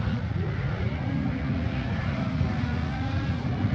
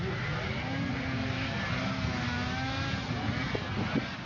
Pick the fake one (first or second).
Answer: first